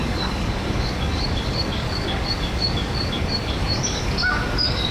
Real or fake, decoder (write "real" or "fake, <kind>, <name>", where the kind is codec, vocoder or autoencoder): fake, codec, DAC